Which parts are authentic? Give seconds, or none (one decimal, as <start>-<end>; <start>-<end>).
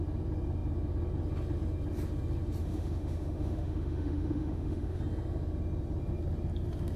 0.0-2.6; 5.0-7.0